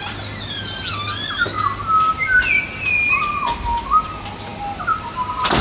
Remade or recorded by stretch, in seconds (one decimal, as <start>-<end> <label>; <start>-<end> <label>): 0.0-5.6 recorded